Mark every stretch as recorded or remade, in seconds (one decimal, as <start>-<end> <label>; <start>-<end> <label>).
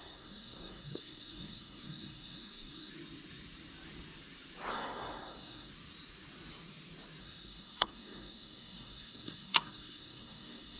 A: 0.0-2.9 remade; 2.9-4.7 recorded; 4.7-5.7 remade; 5.7-7.2 recorded; 7.2-10.8 remade